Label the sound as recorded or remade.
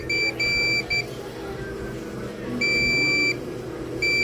recorded